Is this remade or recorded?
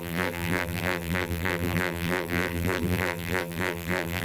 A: remade